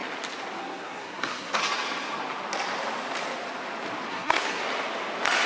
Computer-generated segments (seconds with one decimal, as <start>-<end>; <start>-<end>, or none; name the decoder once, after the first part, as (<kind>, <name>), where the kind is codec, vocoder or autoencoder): 0.6-1.6 (codec, SNAC); 4.1-4.6